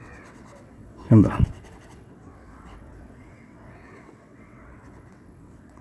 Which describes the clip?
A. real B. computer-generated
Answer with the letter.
B